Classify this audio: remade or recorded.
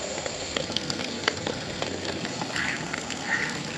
remade